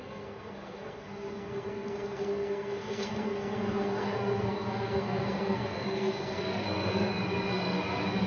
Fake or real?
fake